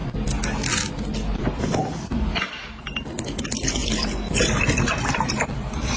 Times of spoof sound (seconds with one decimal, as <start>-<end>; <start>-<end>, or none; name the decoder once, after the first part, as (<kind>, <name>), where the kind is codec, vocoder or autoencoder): 1.5-2.3 (vocoder, BigVGAN v2); 2.8-6.0